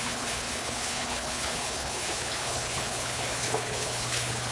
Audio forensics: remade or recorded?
remade